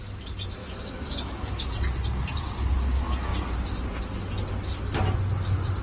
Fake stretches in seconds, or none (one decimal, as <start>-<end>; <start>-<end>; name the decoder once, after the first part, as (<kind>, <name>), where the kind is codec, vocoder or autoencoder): 0.6-1.7 (autoencoder, DAC-VAE)